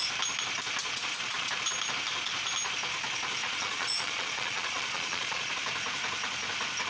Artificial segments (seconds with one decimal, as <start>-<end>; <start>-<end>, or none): 0.8-1.5; 3.4-5.5